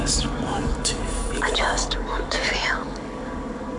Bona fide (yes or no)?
no